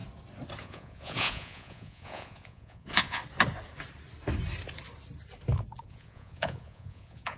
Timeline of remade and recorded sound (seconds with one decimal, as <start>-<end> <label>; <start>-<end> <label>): 0.0-0.6 recorded; 0.6-3.2 remade; 3.2-5.8 recorded; 5.8-7.4 remade